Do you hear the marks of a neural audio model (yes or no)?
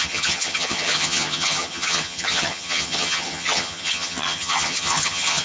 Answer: yes